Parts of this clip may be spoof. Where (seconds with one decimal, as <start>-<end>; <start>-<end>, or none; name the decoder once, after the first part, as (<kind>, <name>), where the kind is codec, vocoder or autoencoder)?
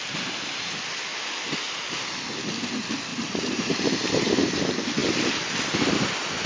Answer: 3.1-4.6 (vocoder, BigVGAN v2)